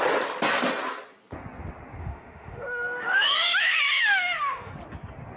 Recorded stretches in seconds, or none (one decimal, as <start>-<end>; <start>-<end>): 0.0-2.0; 4.7-5.4

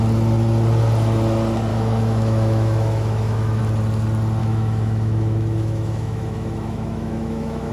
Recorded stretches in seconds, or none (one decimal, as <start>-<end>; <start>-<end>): 0.0-1.7; 3.6-4.4

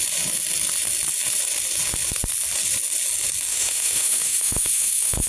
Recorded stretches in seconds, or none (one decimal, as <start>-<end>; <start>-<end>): 0.0-3.5

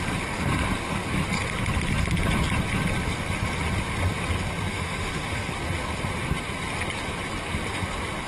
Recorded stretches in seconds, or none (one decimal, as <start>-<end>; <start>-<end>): 0.0-4.7; 5.5-8.3

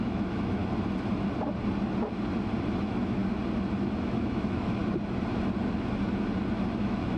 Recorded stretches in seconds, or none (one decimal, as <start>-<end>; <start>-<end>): 0.6-2.8; 3.2-3.8; 4.8-6.8

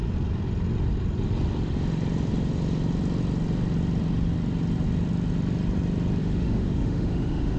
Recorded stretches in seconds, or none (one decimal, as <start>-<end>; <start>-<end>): 0.0-6.2

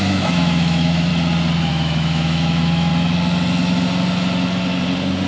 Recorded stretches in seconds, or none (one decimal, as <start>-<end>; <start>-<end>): 1.1-1.7; 2.9-5.3